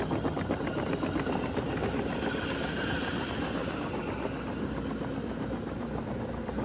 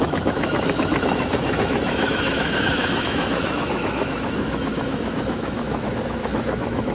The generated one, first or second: second